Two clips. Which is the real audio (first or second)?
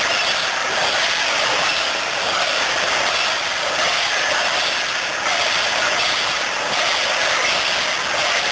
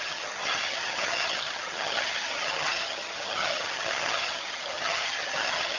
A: first